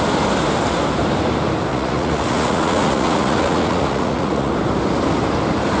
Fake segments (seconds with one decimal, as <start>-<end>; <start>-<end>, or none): 1.7-4.5